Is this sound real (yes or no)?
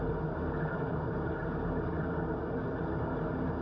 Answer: yes